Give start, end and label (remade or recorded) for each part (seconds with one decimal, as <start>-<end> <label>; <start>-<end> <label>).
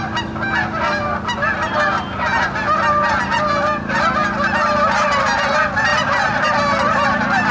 0.0-7.5 recorded